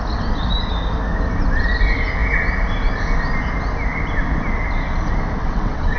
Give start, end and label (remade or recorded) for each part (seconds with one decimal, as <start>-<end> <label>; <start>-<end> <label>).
0.0-5.4 recorded; 5.4-6.0 remade